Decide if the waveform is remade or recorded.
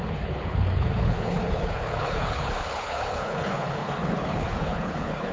remade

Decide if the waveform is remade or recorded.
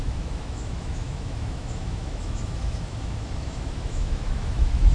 remade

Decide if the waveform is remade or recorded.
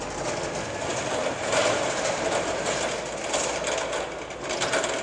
recorded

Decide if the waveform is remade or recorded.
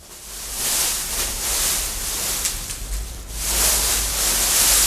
recorded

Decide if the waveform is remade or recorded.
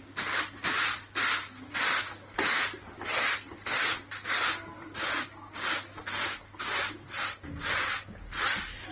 recorded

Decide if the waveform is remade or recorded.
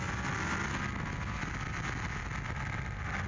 recorded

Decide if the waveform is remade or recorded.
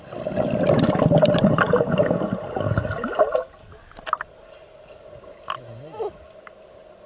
recorded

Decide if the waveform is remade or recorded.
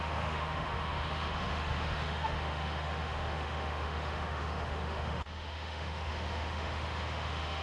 remade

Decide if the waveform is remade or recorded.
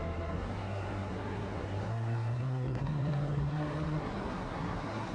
remade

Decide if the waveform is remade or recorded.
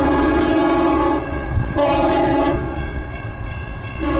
remade